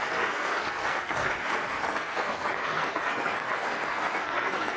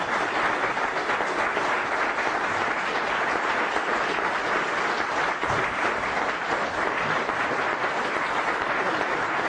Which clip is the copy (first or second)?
first